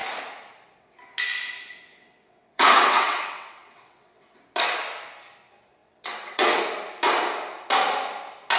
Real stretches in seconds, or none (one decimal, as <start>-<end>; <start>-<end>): 0.0-1.9; 4.4-5.8; 6.6-8.6